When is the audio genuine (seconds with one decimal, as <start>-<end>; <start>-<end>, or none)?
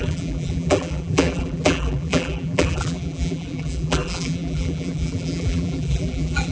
none